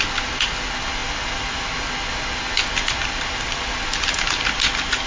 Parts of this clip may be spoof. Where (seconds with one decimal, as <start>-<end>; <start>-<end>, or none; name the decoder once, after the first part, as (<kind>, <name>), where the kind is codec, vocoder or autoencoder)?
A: none